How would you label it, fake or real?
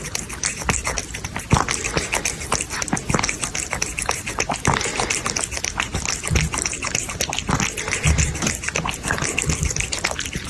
real